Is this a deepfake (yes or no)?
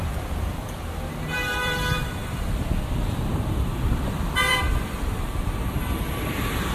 yes